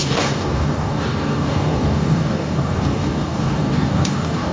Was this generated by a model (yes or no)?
yes